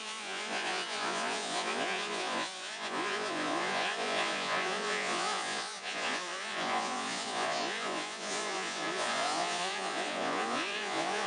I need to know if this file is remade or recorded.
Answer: remade